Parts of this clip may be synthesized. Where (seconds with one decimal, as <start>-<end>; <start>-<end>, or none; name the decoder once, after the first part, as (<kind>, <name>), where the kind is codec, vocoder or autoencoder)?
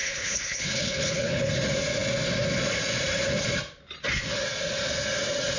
0.0-1.5 (codec, HILCodec)